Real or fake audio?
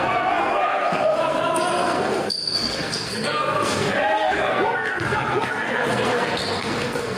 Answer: fake